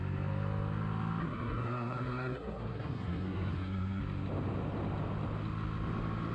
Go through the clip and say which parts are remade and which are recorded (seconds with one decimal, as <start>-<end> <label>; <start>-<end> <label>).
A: 0.0-1.2 recorded; 1.2-4.0 remade; 4.0-6.3 recorded